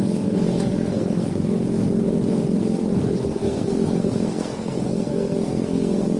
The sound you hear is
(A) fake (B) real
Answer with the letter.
A